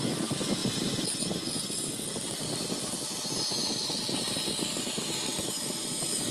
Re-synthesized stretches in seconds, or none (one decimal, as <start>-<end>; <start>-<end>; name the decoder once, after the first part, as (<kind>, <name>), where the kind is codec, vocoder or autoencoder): none